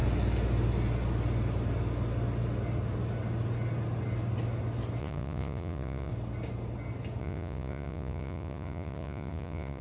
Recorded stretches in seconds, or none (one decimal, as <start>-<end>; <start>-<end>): 0.0-5.0; 6.1-7.2